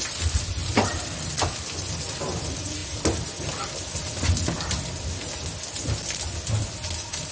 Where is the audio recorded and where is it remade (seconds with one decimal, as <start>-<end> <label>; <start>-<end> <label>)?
0.0-7.3 recorded